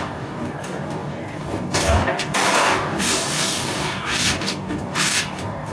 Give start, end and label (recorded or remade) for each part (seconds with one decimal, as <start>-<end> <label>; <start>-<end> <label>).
0.0-5.7 remade